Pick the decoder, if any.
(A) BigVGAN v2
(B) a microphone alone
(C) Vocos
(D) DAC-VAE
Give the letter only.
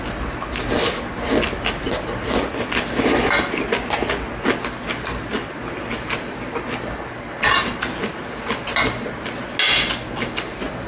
B